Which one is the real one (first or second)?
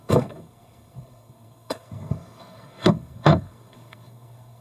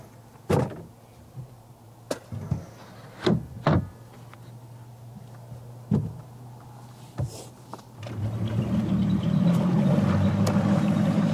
second